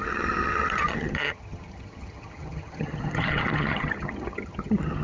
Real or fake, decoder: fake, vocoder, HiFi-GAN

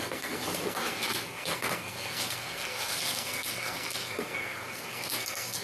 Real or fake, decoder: fake, codec, SNAC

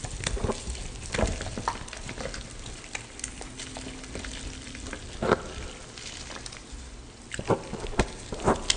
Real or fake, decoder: real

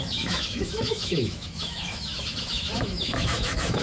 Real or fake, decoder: fake, autoencoder, DAC-VAE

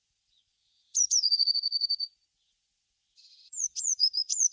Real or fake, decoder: fake, vocoder, Vocos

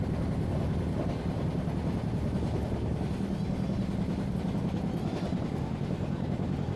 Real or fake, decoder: real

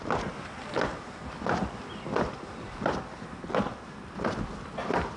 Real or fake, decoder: real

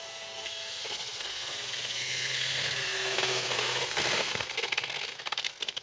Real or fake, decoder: fake, codec, SNAC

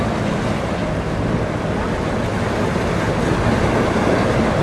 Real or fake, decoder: real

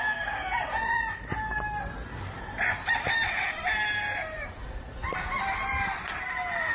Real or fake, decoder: real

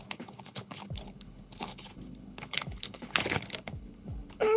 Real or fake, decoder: fake, codec, HILCodec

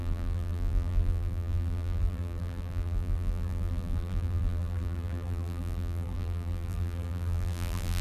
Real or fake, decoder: fake, vocoder, BigVGAN v2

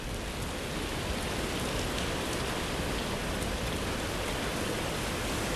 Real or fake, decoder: real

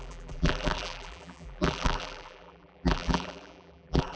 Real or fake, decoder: fake, vocoder, BigVGAN v2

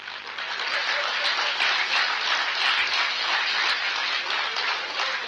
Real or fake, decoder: real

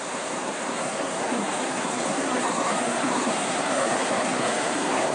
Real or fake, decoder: fake, codec, SNAC